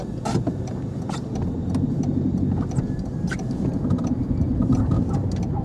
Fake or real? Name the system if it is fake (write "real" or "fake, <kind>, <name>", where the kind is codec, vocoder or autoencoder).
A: fake, vocoder, BigVGAN v2